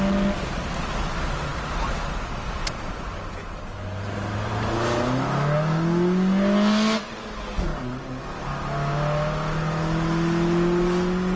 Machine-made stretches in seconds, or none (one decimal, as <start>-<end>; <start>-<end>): none